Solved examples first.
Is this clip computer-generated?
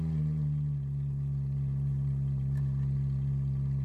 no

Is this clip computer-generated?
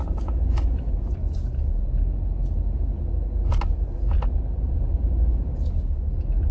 no